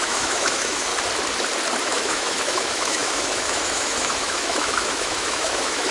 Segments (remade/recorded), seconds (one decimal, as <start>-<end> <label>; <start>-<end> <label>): 0.0-0.9 remade; 0.9-1.8 recorded; 1.8-5.9 remade